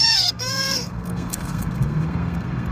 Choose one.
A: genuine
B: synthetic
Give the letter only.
B